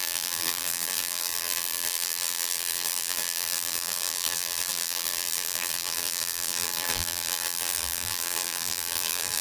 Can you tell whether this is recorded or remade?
remade